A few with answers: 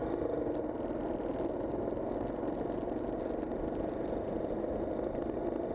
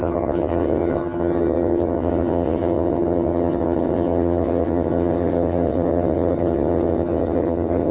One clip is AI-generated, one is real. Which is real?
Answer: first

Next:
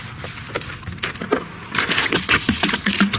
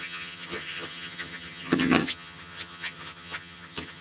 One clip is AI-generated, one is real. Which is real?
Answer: first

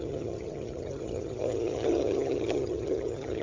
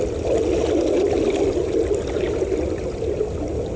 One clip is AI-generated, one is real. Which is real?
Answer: second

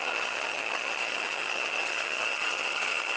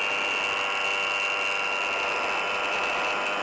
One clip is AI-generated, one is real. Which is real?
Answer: second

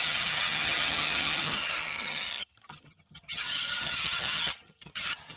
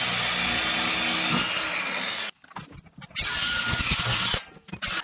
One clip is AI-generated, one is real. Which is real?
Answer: second